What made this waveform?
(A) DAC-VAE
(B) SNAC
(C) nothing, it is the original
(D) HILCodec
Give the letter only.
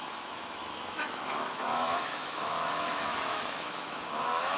A